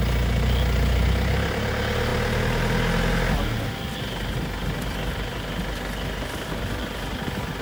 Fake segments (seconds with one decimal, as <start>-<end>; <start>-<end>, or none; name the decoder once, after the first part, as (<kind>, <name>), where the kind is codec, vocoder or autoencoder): none